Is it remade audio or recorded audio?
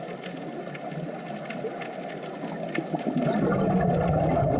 recorded